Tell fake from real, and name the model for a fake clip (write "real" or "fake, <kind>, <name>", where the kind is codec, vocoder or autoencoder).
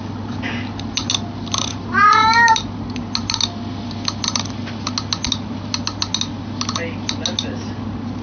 real